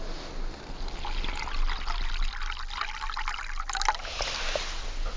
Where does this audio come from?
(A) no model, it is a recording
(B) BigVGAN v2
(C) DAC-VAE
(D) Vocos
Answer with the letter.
A